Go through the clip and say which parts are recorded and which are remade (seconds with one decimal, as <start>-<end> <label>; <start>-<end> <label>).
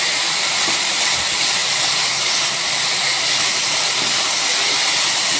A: 0.0-1.6 recorded; 1.6-3.8 remade; 3.8-5.4 recorded